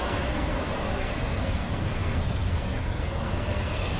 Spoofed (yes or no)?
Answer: yes